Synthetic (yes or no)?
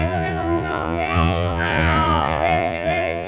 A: yes